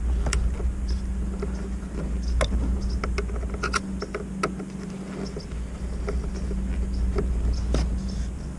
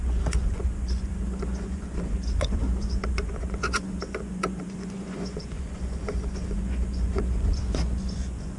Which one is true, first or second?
first